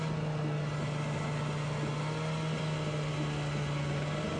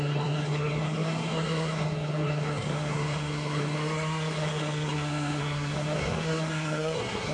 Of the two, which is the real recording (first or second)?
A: first